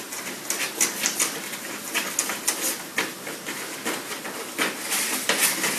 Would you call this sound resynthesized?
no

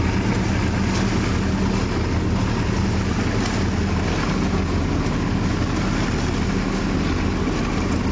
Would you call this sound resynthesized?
no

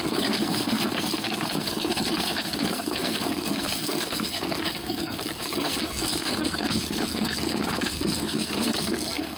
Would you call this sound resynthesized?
yes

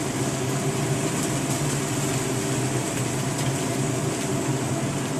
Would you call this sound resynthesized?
no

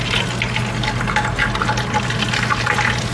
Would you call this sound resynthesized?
no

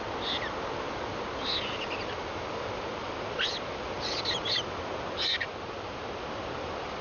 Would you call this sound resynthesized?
no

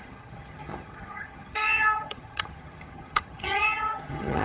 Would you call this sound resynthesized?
yes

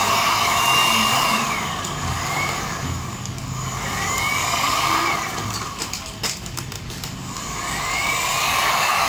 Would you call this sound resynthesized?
yes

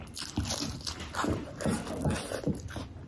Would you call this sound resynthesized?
yes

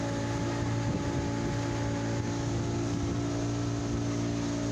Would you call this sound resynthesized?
no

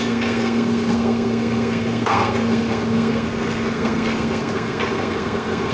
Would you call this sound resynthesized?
yes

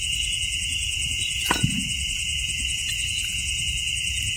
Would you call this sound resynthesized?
yes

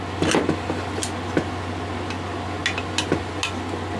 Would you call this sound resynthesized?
no